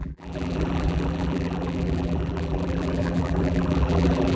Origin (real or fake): fake